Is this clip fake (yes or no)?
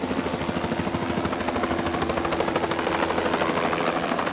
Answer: no